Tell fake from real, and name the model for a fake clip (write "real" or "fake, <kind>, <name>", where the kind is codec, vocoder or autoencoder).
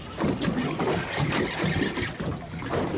real